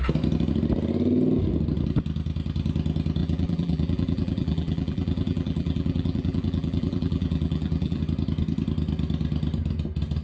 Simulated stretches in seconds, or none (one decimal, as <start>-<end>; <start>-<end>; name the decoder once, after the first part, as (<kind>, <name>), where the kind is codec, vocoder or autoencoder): 3.2-8.0 (vocoder, BigVGAN v2)